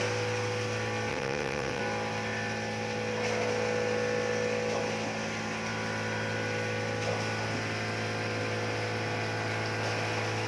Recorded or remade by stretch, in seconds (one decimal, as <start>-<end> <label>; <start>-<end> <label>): 0.0-1.1 recorded; 1.1-1.8 remade; 1.8-10.5 recorded